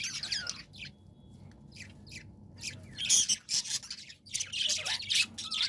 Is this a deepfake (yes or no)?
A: no